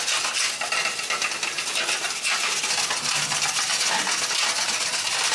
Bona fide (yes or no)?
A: yes